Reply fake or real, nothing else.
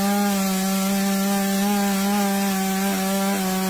real